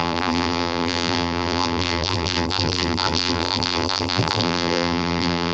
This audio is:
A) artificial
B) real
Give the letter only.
A